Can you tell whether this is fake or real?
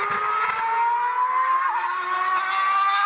real